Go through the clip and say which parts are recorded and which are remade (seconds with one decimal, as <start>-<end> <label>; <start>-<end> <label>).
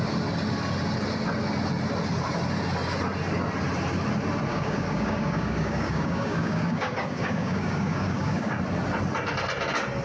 0.0-4.5 recorded; 4.5-8.6 remade; 8.6-10.0 recorded